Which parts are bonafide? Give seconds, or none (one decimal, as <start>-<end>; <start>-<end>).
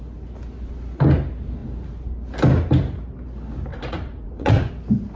0.0-3.7; 4.7-5.2